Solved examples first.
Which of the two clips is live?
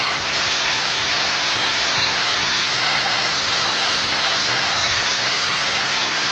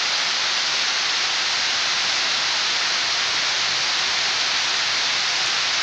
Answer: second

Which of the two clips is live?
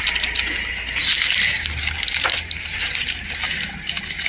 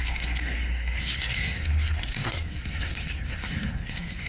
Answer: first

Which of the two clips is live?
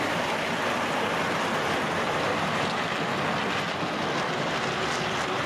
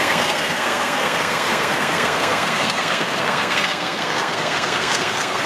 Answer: first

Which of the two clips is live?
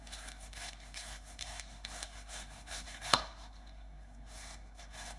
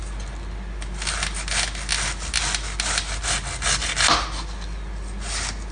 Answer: second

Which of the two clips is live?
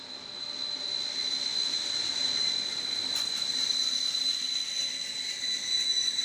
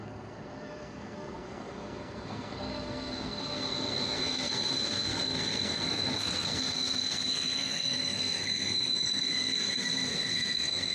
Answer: first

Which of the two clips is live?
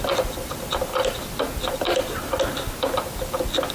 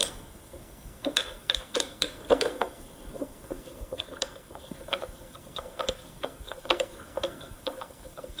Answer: first